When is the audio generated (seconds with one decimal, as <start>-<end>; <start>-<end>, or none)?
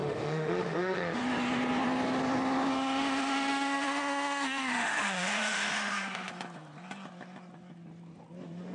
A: 0.0-1.2; 2.7-6.3